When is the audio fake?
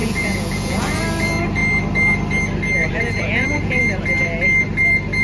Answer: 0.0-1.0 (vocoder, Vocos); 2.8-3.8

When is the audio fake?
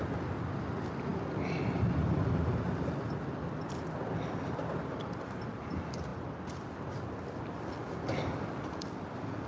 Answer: none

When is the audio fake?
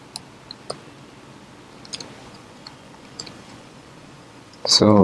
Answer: 2.2-5.0 (vocoder, Vocos)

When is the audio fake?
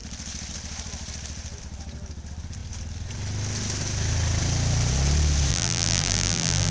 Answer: 5.5-6.7 (vocoder, BigVGAN v2)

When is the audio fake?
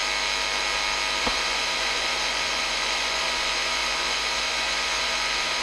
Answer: 1.2-5.6 (vocoder, Vocos)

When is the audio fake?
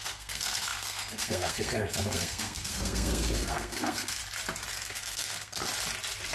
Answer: 0.0-4.2 (codec, SNAC); 4.7-5.6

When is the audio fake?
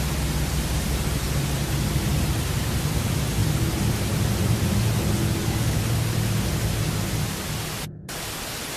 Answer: 5.2-5.8 (codec, DAC)